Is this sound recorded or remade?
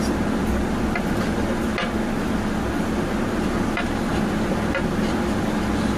recorded